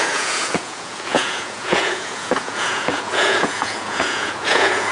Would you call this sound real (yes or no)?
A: no